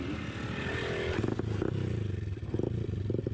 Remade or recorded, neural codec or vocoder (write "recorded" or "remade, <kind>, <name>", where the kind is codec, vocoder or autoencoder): recorded